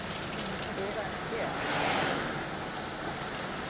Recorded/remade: recorded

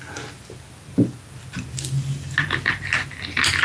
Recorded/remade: recorded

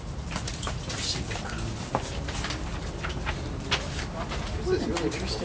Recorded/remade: recorded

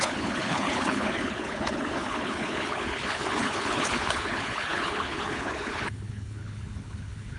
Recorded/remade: remade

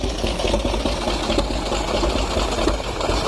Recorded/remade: recorded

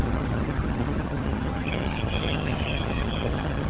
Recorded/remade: remade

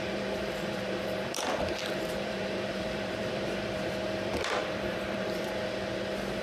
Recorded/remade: remade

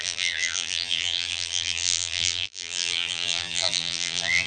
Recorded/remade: remade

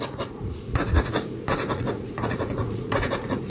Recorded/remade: remade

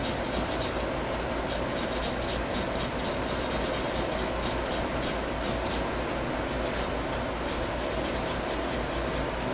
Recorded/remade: recorded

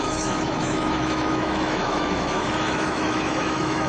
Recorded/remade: remade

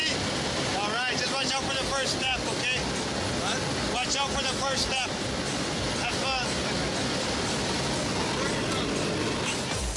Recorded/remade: recorded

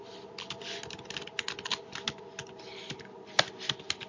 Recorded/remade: recorded